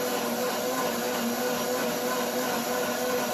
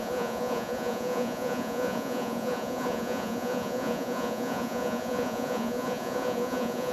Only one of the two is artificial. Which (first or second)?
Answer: second